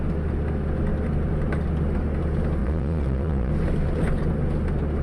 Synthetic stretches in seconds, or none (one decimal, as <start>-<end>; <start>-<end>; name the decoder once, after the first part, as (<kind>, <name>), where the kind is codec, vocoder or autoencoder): 2.6-3.5 (vocoder, Vocos)